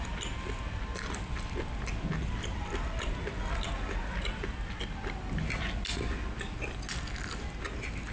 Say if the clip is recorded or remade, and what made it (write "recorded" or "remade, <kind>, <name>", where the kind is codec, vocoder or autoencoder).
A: recorded